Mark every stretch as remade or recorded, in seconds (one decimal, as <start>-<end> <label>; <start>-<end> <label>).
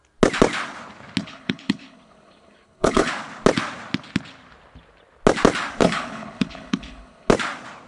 0.0-1.2 recorded; 1.2-3.1 remade; 3.1-5.8 recorded; 5.8-7.3 remade; 7.3-7.9 recorded